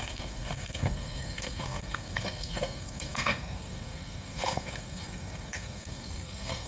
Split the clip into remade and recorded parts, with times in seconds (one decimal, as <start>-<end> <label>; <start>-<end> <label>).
0.0-6.7 remade